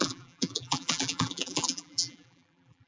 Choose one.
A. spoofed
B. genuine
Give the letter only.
A